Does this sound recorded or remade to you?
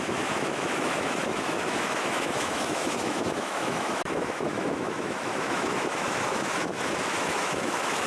remade